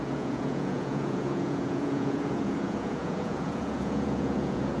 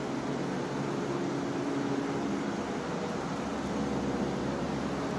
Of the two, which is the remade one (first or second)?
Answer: first